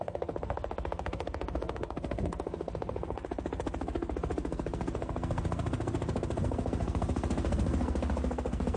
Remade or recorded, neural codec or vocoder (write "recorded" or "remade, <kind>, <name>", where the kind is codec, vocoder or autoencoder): remade, codec, SNAC